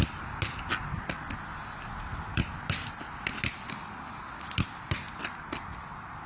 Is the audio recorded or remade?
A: recorded